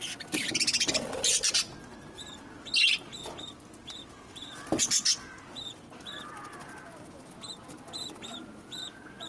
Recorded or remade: recorded